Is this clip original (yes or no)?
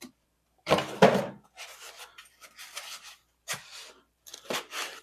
no